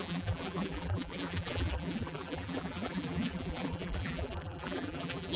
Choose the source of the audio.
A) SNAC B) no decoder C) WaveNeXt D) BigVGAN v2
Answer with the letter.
D